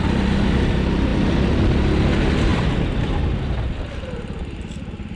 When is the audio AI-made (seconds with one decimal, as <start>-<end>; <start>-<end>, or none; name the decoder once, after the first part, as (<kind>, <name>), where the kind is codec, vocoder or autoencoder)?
none